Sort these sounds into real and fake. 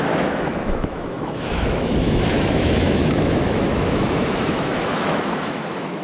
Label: fake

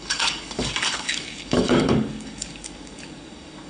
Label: fake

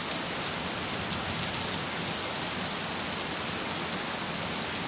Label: real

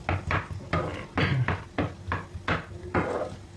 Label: real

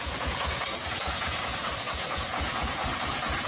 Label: fake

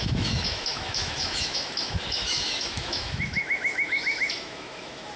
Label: fake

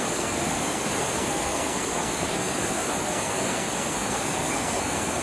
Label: fake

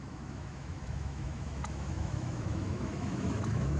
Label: fake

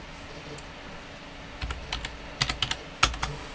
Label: real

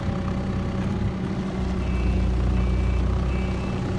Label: real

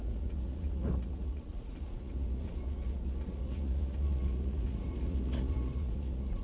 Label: fake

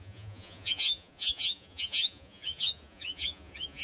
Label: fake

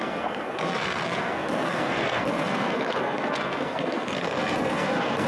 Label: fake